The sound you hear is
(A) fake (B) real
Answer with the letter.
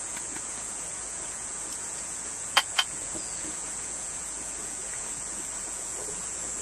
A